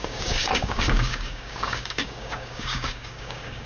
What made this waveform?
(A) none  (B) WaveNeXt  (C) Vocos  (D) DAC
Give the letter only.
D